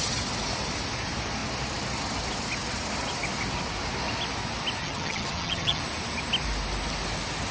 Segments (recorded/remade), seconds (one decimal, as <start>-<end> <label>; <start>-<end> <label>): 0.0-4.8 recorded; 4.8-5.8 remade; 5.8-7.5 recorded